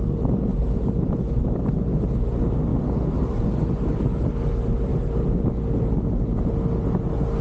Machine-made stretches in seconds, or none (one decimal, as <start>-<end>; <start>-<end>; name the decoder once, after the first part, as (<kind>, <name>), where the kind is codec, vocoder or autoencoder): 0.5-1.1 (vocoder, BigVGAN v2); 2.7-4.4; 4.9-5.5